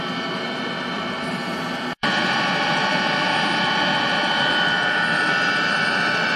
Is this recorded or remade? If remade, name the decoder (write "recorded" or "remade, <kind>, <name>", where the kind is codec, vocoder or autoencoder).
remade, vocoder, BigVGAN v2